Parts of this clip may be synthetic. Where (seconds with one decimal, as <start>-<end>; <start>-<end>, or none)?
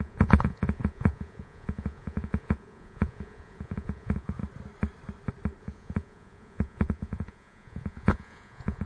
0.0-4.4; 5.6-8.9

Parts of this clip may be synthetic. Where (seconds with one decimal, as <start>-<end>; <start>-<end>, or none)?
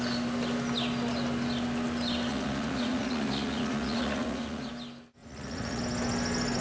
2.3-4.7; 5.2-5.8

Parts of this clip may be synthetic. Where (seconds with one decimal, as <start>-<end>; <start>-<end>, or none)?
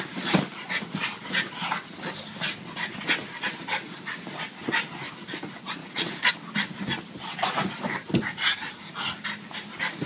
5.8-6.3